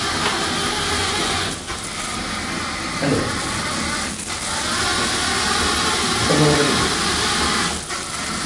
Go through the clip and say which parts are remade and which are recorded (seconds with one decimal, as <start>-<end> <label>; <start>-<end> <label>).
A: 0.0-1.0 recorded; 1.0-1.5 remade; 1.5-8.5 recorded